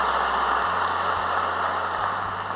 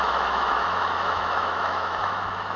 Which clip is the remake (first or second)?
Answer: second